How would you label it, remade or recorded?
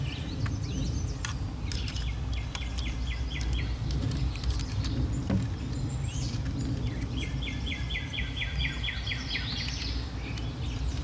recorded